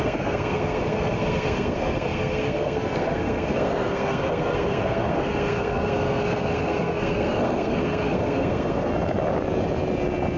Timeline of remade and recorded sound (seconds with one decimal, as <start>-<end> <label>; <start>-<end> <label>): 0.0-8.9 remade; 8.9-10.4 recorded